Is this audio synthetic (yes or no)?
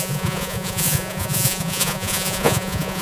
yes